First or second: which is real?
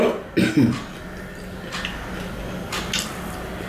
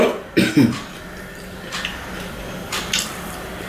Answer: first